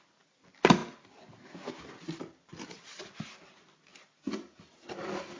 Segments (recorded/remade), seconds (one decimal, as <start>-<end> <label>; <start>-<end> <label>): 0.0-5.4 recorded